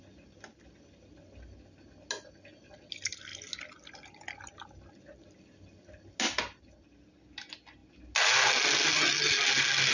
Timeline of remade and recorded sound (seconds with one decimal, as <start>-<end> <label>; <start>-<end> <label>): 0.0-9.9 recorded